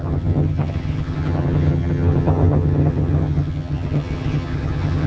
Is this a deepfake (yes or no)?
yes